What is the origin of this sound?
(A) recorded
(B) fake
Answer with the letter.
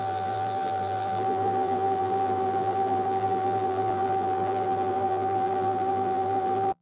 B